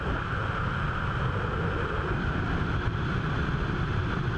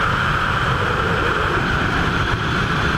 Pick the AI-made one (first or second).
second